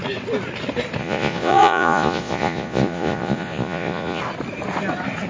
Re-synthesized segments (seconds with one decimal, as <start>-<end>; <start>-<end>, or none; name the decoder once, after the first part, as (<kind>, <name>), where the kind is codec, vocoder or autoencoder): 1.0-4.2 (vocoder, Vocos)